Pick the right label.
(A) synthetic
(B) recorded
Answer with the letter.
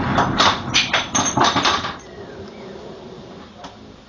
A